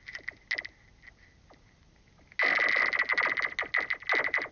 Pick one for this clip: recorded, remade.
recorded